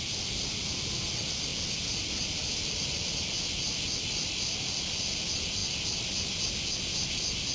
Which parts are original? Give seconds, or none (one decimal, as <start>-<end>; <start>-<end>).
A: 0.0-7.5